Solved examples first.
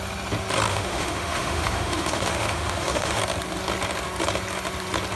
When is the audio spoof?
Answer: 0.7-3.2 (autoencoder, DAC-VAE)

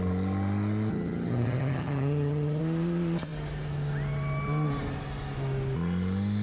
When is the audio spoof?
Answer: 0.9-2.6 (vocoder, HiFi-GAN)

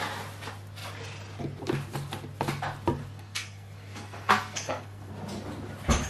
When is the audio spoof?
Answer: 3.0-5.1 (codec, SNAC)